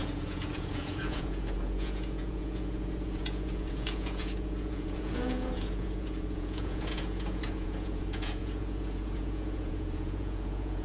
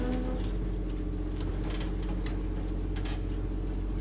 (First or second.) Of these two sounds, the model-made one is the first